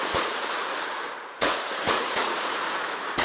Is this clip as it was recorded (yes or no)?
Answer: no